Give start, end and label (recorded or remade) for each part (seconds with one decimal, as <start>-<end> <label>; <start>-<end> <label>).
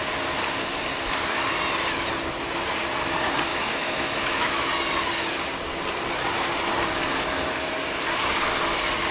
0.0-3.5 recorded; 3.5-4.7 remade; 4.7-9.1 recorded